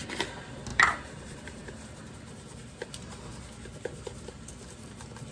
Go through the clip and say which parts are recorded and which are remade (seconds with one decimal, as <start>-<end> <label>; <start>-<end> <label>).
0.0-0.7 recorded; 0.7-2.2 remade; 2.2-5.3 recorded